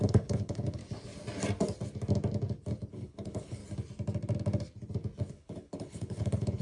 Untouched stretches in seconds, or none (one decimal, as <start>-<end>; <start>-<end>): 0.8-2.9; 3.6-5.3